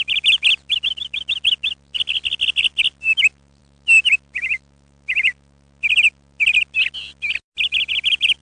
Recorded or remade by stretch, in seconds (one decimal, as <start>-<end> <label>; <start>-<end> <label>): 0.0-8.4 recorded